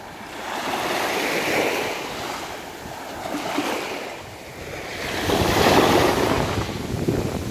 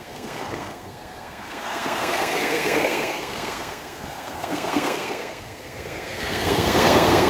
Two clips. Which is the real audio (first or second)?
first